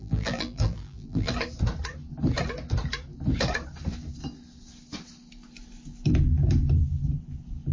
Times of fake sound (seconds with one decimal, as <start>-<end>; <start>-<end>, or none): 0.0-1.3